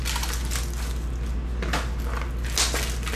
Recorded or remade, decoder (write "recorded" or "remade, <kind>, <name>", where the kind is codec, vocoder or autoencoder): recorded